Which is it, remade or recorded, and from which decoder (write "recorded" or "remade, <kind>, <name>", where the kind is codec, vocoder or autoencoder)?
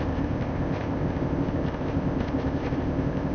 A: remade, codec, ZipCodec